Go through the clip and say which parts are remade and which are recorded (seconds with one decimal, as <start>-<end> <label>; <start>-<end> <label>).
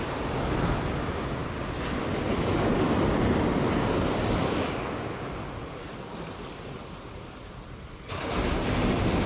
0.0-9.3 recorded